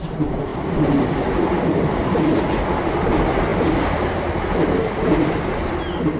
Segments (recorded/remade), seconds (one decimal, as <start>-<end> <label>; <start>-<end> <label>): 0.0-0.5 recorded; 0.5-2.4 remade; 2.4-6.2 recorded